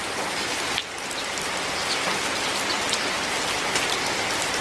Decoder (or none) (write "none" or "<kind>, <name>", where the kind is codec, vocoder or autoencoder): vocoder, BigVGAN v2